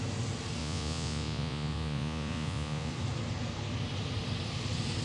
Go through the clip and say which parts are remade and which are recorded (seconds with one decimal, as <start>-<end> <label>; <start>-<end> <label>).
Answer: 0.0-0.6 recorded; 0.6-2.9 remade; 2.9-5.0 recorded